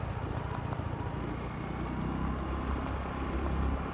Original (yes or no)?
yes